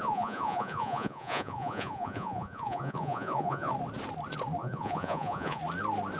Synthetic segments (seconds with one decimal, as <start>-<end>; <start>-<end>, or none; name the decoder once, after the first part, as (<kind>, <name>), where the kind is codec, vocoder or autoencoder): 0.0-3.7 (vocoder, Vocos); 4.6-5.6